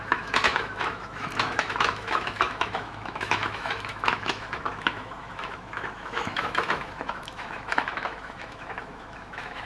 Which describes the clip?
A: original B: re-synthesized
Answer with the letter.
B